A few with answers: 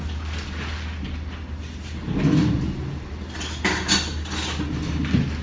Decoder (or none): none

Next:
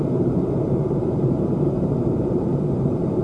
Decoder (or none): vocoder, BigVGAN v2